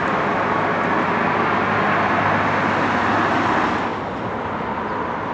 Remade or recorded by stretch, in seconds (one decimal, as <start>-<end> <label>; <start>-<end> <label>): 0.0-5.3 recorded